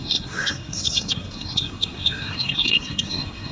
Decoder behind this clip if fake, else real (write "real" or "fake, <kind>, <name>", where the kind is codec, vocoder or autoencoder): fake, codec, SNAC